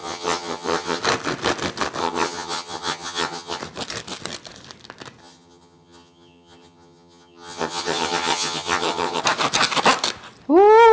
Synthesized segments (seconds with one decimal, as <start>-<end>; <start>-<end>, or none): 0.0-1.0; 2.0-3.6; 5.2-9.2